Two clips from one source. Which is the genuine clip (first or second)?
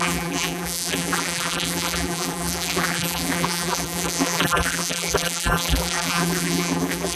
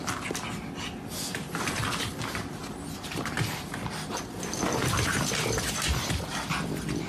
second